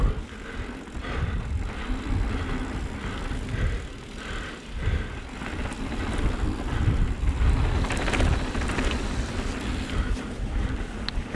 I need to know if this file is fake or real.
real